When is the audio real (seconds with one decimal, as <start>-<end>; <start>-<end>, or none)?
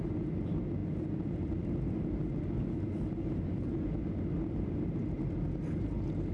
0.0-0.8; 1.5-6.3